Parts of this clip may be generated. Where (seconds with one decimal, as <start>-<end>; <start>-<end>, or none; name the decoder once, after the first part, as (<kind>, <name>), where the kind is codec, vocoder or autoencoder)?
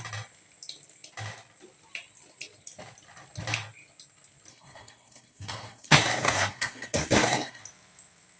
4.5-7.6 (codec, SNAC)